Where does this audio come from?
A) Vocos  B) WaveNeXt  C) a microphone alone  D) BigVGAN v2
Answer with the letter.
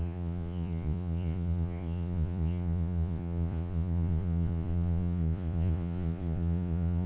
A